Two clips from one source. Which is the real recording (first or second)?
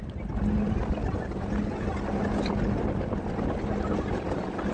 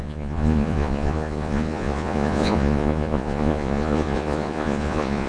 first